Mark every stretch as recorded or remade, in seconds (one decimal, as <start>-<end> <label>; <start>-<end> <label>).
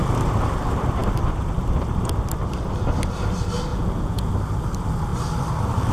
0.0-3.7 recorded; 3.7-4.3 remade; 4.3-5.9 recorded